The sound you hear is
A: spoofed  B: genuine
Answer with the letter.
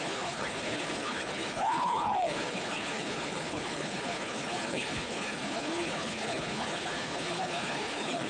A